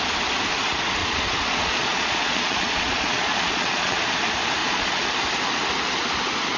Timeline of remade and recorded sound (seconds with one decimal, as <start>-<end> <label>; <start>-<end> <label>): 0.0-1.0 recorded; 1.0-4.0 remade; 4.0-4.6 recorded; 4.6-5.1 remade; 5.1-6.6 recorded